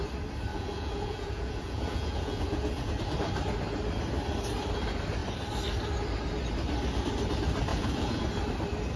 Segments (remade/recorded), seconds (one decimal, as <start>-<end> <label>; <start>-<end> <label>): 0.0-0.5 recorded; 0.5-2.9 remade; 2.9-7.7 recorded; 7.7-8.2 remade; 8.2-9.0 recorded